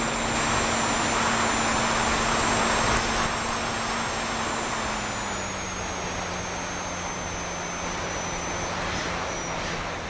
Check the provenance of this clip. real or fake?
real